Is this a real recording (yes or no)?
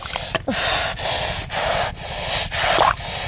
yes